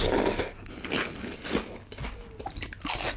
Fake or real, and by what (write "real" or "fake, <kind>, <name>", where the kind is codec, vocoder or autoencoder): real